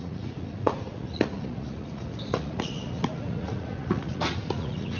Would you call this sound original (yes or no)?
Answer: no